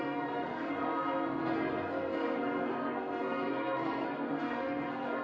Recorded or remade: remade